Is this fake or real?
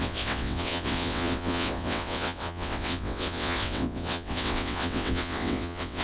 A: fake